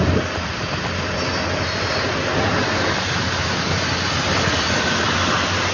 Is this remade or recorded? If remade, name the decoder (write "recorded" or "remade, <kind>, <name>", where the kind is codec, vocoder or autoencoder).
recorded